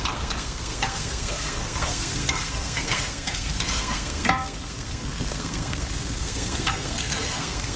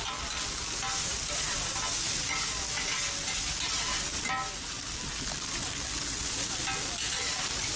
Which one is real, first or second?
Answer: second